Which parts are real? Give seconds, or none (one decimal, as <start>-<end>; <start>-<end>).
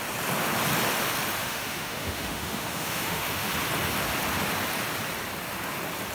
0.0-1.4; 3.5-6.1